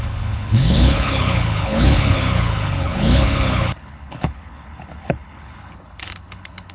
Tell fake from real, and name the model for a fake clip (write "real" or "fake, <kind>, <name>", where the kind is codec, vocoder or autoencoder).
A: fake, codec, HILCodec